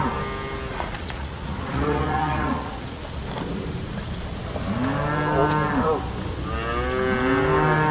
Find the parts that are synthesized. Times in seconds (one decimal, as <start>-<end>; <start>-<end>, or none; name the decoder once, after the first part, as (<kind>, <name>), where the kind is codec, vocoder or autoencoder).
0.7-3.0 (vocoder, Vocos)